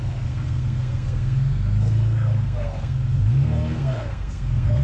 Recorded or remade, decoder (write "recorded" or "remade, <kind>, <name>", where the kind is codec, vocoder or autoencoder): remade, codec, SNAC